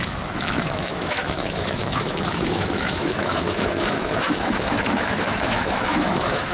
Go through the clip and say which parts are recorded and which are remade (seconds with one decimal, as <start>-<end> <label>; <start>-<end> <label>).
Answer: 0.0-6.5 remade